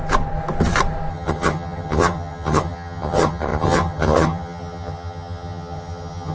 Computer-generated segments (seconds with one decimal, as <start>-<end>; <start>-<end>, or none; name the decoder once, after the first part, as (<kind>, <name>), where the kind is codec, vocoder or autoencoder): 1.1-6.3 (vocoder, HiFi-GAN)

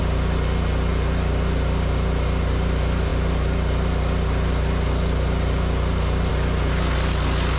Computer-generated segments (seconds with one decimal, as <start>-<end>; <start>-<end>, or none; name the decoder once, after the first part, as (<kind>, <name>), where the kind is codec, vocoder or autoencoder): none

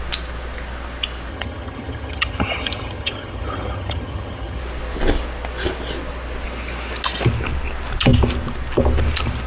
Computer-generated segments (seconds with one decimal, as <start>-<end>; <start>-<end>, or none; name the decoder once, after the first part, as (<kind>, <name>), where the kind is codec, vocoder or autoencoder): 1.3-4.6 (vocoder, HiFi-GAN)

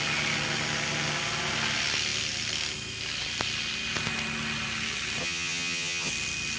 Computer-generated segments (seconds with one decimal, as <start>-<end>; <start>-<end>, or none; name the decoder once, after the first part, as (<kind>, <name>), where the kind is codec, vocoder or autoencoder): 5.2-6.1 (vocoder, HiFi-GAN)